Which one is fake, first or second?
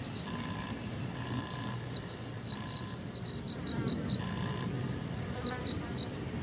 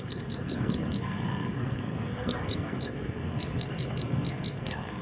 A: second